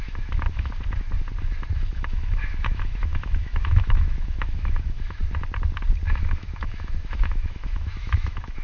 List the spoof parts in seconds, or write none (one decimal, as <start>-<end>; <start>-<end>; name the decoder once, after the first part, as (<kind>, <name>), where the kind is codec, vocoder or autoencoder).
0.0-0.7 (autoencoder, DAC-VAE); 1.9-5.2; 6.1-8.6